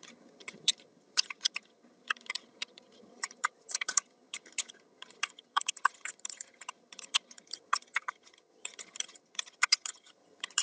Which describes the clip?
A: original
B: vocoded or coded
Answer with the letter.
B